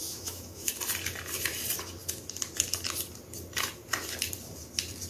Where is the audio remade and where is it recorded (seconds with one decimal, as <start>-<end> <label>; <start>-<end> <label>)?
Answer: 0.0-0.7 remade; 0.7-5.1 recorded